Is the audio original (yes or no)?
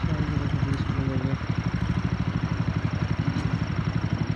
yes